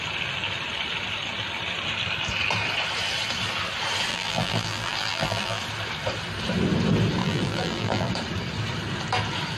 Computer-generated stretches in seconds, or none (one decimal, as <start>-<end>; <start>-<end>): 4.1-5.6; 7.2-8.1